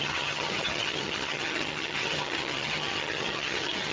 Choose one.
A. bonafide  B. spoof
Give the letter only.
B